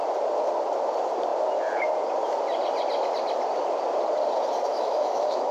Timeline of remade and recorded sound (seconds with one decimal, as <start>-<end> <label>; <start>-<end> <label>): 0.0-4.7 recorded; 4.7-5.5 remade